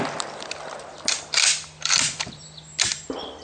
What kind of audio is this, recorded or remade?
recorded